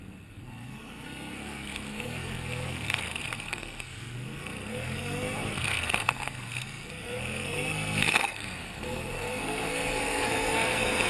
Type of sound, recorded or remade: remade